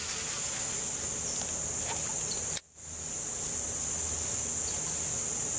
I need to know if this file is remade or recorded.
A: recorded